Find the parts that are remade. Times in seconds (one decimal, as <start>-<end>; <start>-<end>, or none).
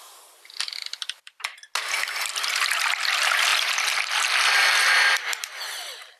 none